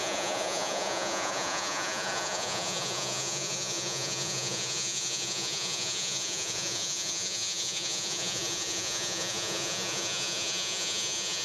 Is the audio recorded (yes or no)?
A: no